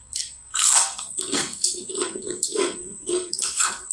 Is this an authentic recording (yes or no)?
no